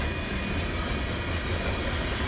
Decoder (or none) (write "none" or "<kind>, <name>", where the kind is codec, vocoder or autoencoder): none